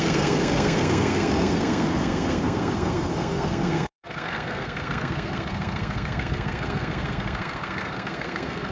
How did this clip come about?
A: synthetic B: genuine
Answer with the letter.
A